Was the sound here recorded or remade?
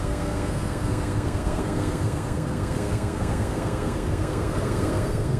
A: remade